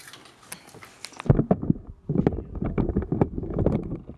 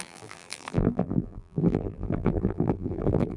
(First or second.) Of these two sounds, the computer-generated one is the second